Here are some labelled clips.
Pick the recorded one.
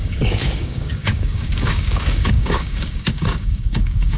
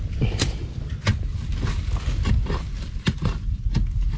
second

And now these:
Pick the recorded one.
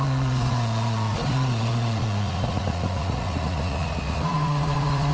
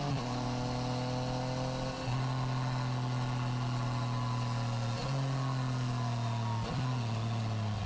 second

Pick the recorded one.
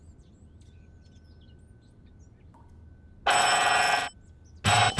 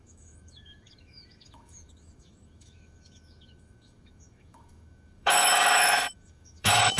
first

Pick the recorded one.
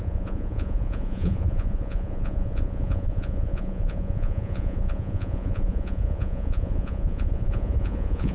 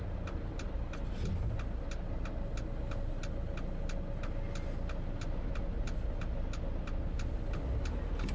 second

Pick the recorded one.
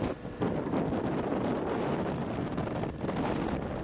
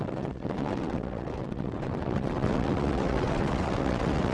first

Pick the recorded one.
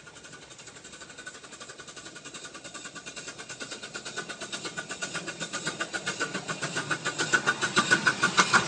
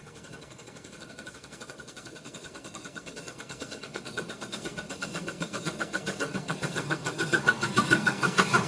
first